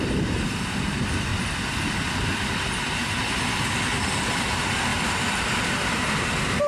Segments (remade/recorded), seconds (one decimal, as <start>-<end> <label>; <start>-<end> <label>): 0.0-1.3 remade; 1.3-3.6 recorded; 3.6-6.7 remade